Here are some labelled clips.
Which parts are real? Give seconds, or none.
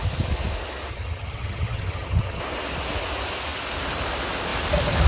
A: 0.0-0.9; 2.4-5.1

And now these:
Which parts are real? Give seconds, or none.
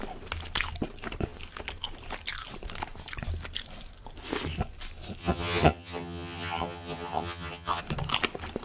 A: 0.0-5.2; 7.8-8.6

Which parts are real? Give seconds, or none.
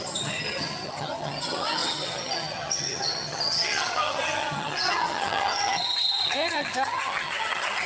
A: none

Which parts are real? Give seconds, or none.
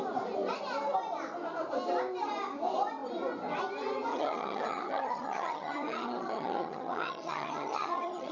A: 0.0-4.1